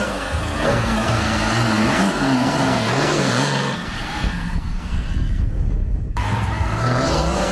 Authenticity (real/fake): fake